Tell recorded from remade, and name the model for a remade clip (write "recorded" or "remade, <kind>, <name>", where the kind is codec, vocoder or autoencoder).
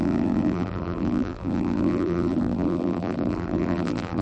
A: remade, vocoder, BigVGAN v2